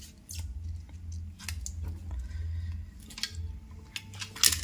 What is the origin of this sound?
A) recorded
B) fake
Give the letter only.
A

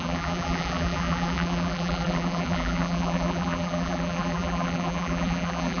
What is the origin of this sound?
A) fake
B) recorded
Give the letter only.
A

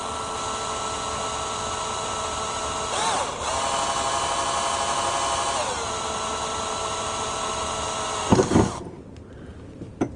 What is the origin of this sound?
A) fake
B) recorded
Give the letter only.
B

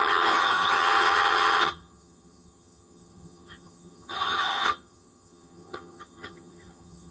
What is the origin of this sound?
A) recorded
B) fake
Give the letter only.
B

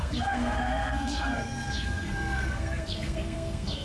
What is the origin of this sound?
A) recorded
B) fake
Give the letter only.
B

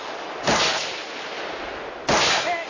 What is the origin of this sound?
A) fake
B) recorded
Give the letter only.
B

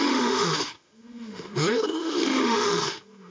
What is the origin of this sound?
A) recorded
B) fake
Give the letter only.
B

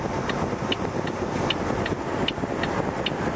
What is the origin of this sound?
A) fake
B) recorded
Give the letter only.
B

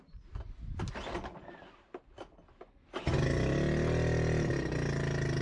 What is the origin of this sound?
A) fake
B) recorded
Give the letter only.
B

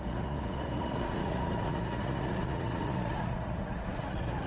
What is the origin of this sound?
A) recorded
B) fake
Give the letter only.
B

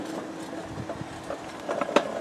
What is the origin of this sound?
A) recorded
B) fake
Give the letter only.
A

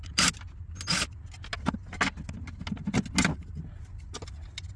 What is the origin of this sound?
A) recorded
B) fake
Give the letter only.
A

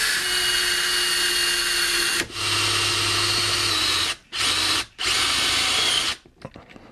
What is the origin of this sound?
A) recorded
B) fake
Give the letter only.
A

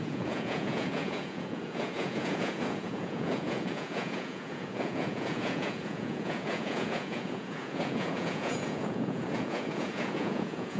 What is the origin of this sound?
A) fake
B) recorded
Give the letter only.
A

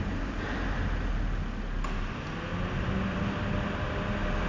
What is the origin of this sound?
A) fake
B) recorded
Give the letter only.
B